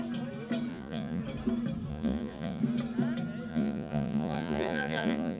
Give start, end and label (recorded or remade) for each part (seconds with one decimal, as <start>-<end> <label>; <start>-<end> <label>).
0.0-0.7 recorded; 0.7-1.2 remade; 1.2-1.9 recorded; 1.9-2.6 remade; 2.6-3.5 recorded; 3.5-5.4 remade